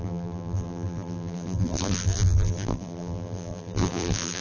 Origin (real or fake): fake